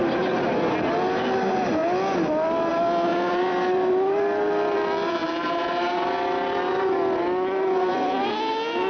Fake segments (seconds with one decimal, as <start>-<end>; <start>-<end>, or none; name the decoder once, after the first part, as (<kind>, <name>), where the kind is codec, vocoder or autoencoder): none